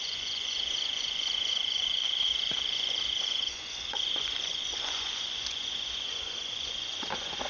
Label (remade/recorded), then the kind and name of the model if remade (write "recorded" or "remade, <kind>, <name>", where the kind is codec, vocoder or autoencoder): remade, vocoder, Vocos